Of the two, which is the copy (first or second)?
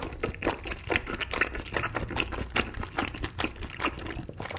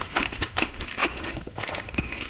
second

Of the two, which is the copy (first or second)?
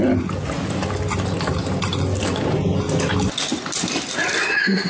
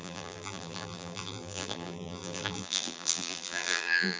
second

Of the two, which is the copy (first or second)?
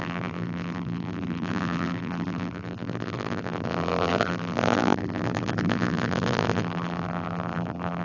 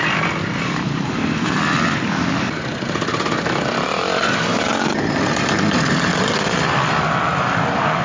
first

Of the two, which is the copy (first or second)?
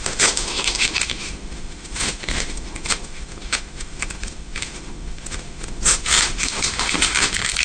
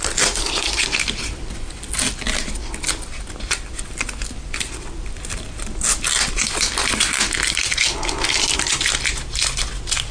first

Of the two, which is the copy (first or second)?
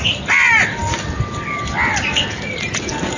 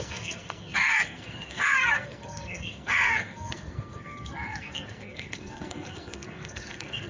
second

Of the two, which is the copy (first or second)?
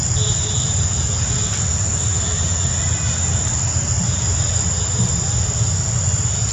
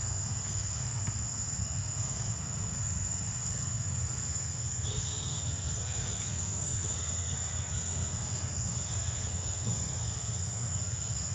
second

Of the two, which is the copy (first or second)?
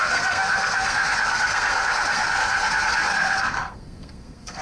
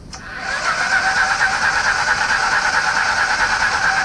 first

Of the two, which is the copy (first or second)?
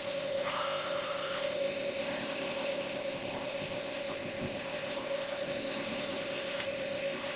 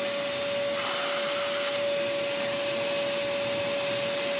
first